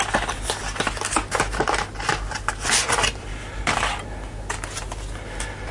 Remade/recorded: recorded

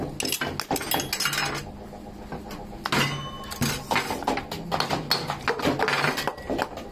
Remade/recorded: recorded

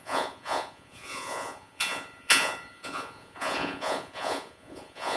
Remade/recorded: remade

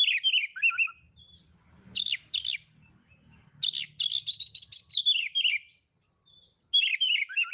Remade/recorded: recorded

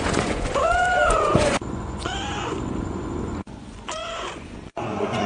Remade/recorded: remade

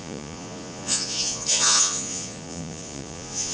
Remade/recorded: remade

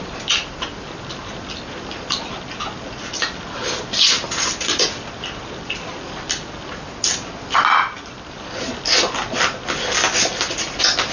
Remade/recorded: recorded